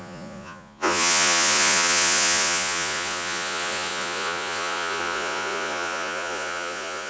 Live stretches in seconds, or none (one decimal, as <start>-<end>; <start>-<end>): none